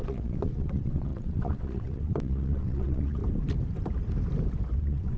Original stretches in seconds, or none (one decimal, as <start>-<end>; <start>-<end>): 3.2-4.8